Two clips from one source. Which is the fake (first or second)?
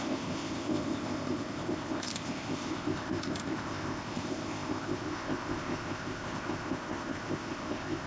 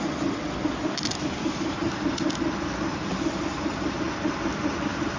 first